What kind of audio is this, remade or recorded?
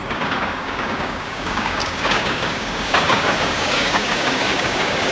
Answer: remade